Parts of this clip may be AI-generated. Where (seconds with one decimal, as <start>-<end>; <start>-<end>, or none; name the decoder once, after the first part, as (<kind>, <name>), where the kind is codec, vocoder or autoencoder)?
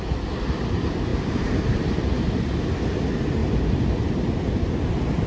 1.1-2.2 (vocoder, BigVGAN v2); 3.4-4.1